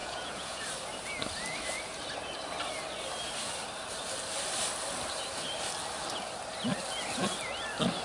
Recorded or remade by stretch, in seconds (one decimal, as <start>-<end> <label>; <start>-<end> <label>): 0.0-0.6 remade; 0.6-8.0 recorded